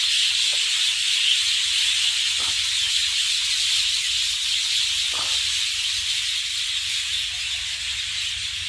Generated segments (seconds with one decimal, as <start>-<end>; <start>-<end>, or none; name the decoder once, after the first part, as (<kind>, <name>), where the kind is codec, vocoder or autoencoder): none

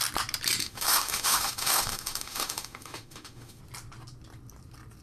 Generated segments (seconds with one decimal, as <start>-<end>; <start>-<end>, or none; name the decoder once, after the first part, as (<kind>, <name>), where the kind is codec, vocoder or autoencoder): 0.6-3.6 (autoencoder, DAC-VAE)

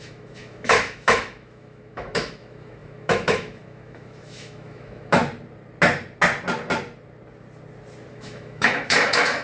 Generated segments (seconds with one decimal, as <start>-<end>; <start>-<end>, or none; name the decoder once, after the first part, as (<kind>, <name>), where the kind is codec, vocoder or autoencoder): 0.0-5.2 (autoencoder, DAC-VAE); 8.1-9.4

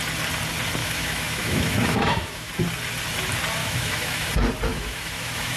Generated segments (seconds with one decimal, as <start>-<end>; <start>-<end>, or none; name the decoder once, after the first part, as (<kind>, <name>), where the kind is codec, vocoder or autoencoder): 0.8-2.5 (autoencoder, DAC-VAE); 3.6-4.3; 4.7-5.6

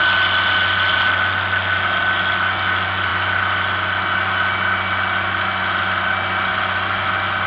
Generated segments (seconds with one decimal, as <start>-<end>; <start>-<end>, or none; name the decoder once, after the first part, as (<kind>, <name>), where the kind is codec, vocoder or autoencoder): none